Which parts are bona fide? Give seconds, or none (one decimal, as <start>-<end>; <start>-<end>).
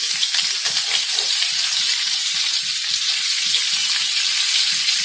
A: none